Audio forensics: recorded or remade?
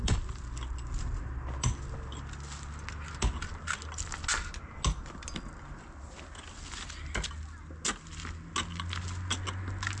recorded